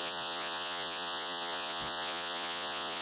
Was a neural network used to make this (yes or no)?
yes